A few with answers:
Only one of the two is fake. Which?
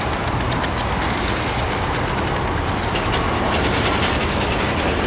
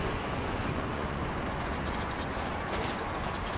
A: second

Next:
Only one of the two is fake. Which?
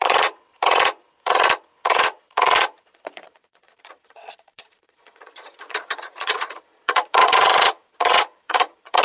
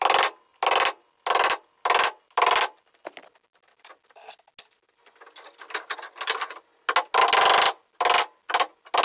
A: first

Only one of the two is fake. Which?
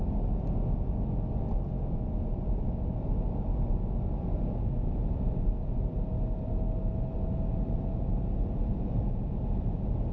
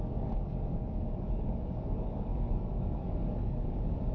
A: second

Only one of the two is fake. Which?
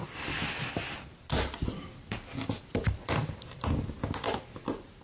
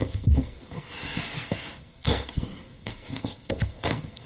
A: second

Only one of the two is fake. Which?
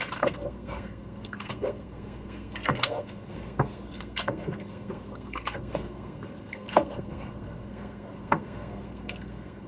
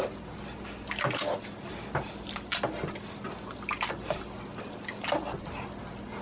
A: first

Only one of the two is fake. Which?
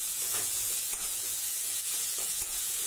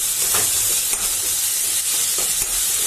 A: first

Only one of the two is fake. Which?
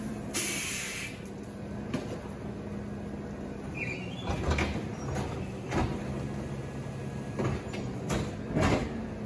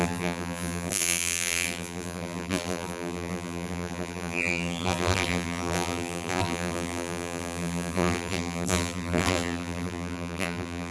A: second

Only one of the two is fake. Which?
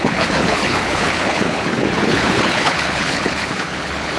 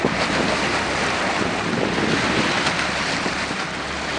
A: first